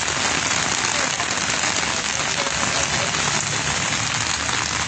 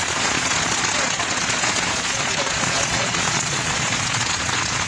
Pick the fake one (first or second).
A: second